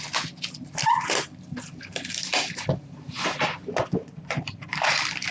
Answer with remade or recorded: recorded